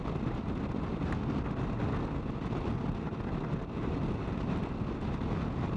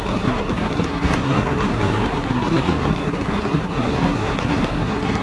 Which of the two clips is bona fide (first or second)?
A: first